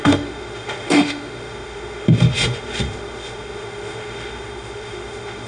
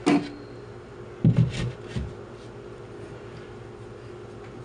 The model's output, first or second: first